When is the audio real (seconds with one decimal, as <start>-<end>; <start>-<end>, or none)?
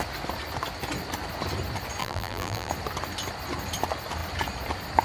0.0-2.0; 2.7-5.0